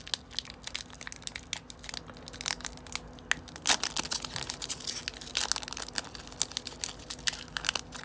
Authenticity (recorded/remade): recorded